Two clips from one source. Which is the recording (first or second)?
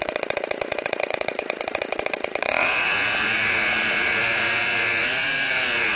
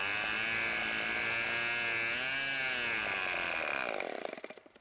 second